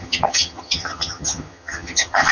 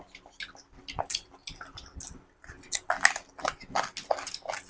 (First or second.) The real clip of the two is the second